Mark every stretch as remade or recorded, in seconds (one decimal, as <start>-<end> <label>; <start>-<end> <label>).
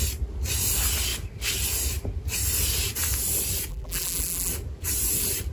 0.0-3.7 recorded; 3.7-4.5 remade; 4.5-5.5 recorded